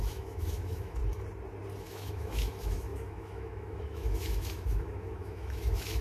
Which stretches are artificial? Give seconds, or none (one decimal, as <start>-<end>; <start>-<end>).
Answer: 0.0-1.0; 1.8-6.0